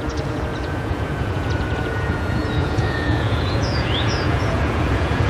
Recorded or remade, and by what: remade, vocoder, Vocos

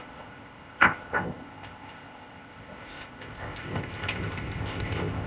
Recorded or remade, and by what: remade, codec, ZipCodec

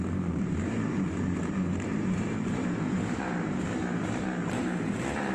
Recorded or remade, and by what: remade, vocoder, BigVGAN v2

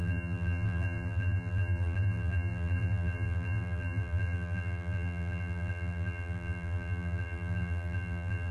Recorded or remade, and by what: remade, vocoder, BigVGAN v2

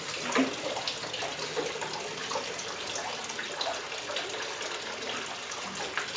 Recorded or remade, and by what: recorded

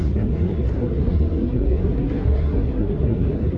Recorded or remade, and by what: remade, codec, SNAC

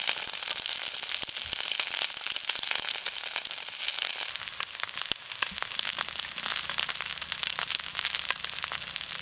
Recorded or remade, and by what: recorded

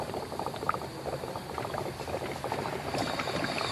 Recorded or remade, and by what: recorded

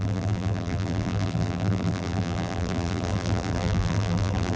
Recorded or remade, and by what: remade, vocoder, BigVGAN v2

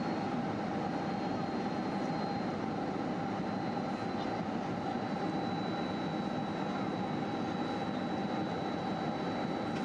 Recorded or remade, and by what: recorded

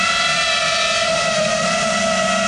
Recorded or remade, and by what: remade, vocoder, BigVGAN v2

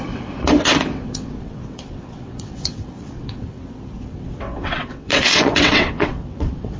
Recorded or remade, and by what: remade, vocoder, WaveNeXt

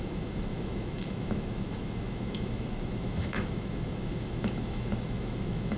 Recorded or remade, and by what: remade, autoencoder, DAC-VAE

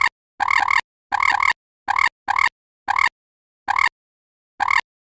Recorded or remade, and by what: recorded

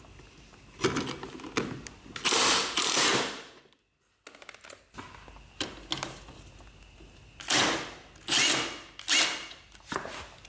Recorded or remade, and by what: recorded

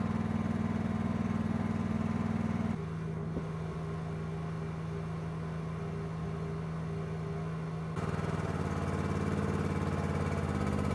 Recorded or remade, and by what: recorded